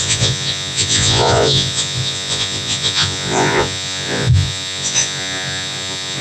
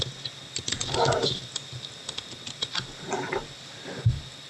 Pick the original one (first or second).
second